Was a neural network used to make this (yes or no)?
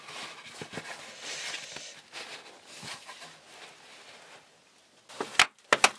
no